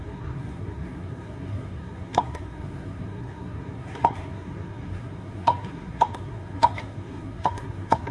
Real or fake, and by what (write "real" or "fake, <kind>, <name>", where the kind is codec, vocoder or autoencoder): fake, codec, SNAC